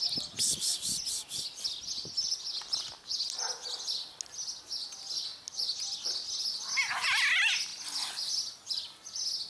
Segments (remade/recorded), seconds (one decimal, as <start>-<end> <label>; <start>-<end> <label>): 0.0-9.5 recorded